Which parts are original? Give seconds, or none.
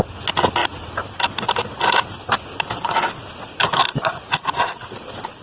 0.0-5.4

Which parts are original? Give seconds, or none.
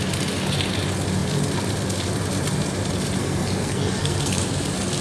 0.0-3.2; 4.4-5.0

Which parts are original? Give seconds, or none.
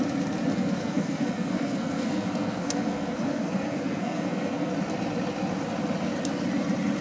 0.0-0.5; 4.7-7.0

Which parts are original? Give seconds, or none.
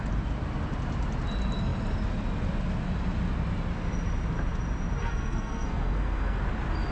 0.0-5.0; 6.4-6.9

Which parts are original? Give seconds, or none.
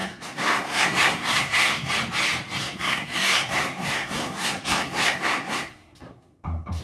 1.9-2.6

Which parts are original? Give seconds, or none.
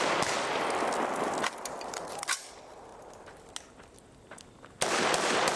0.0-5.6